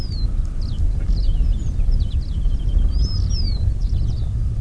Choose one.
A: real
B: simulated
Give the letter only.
A